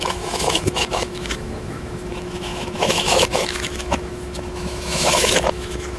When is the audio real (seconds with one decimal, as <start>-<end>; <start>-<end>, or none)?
none